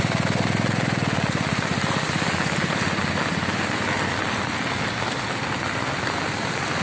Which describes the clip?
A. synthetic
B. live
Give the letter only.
B